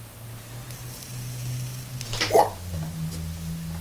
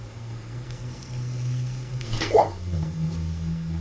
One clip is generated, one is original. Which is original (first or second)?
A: first